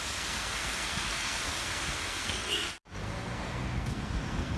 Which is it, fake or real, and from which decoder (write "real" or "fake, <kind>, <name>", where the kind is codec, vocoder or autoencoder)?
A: fake, codec, SNAC